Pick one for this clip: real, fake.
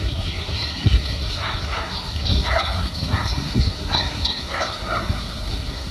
fake